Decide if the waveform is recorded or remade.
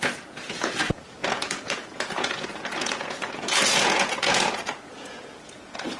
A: remade